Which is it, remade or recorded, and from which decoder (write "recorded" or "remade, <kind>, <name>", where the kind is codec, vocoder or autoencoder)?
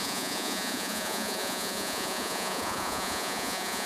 remade, vocoder, Vocos